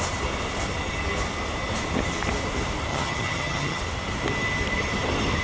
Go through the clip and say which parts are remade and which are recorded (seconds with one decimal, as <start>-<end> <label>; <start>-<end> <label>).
0.0-2.9 recorded; 2.9-3.8 remade; 3.8-5.4 recorded